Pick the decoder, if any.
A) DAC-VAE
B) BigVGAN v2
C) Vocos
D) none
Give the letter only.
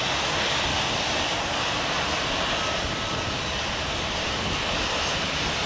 D